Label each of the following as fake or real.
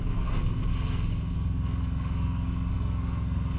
fake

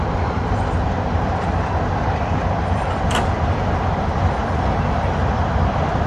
fake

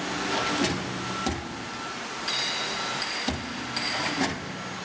real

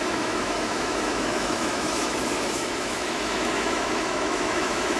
fake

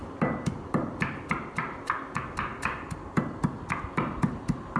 real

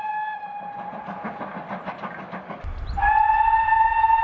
real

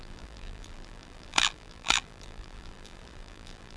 fake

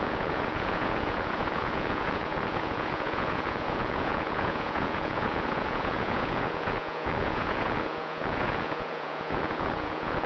fake